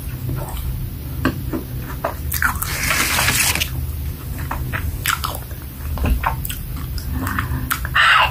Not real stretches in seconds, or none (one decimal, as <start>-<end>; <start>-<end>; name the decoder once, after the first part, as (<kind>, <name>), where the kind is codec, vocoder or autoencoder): none